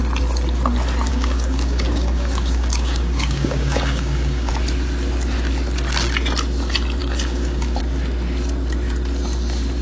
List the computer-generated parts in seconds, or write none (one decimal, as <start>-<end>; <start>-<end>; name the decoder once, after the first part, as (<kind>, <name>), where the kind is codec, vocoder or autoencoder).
1.1-4.5 (codec, DAC); 7.0-7.8